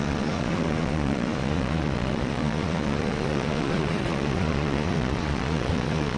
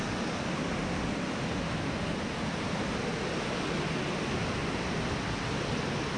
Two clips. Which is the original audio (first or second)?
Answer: second